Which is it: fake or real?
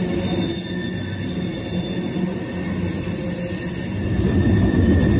real